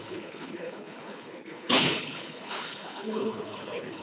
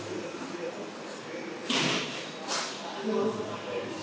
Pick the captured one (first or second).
second